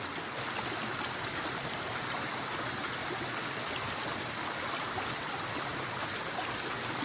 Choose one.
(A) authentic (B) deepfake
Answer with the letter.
A